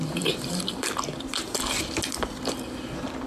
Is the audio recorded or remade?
remade